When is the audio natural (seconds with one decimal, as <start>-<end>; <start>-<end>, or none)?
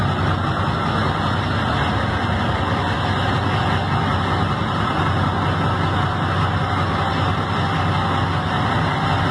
0.0-9.3